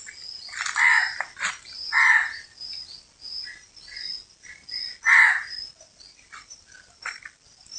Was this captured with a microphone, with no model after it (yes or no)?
yes